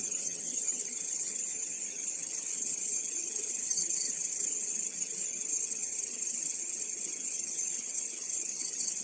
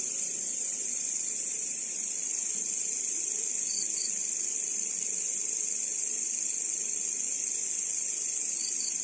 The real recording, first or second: second